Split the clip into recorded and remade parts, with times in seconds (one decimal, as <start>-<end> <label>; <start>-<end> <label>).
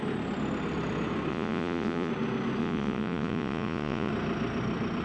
0.0-1.3 recorded; 1.3-2.1 remade; 2.1-2.6 recorded; 2.6-4.1 remade; 4.1-5.0 recorded